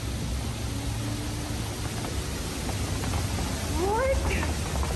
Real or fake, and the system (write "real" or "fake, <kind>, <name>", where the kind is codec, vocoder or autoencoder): real